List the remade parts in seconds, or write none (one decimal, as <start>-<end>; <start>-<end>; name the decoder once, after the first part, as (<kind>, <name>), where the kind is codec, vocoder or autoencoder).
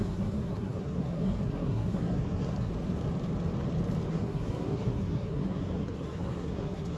0.0-2.7 (codec, SNAC); 4.1-7.0